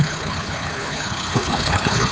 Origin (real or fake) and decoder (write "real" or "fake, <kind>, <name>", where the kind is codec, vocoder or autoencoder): fake, codec, HILCodec